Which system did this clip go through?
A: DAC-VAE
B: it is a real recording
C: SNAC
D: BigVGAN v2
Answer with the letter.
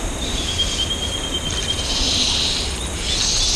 B